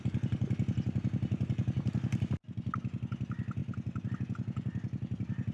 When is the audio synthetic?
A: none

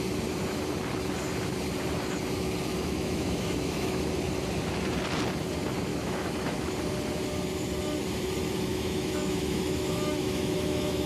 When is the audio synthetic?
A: 2.7-4.0; 5.9-6.7; 8.7-11.1

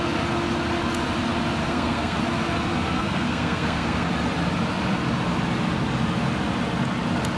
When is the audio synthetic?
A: 1.6-2.2; 3.0-4.1

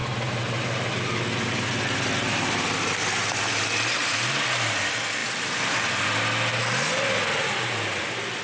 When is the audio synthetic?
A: 0.0-1.0; 2.3-4.4